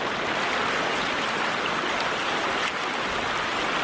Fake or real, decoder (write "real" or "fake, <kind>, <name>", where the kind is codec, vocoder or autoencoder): real